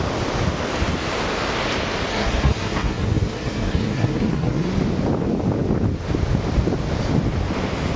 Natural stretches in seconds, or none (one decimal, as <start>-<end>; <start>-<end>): 0.0-2.1; 4.7-8.0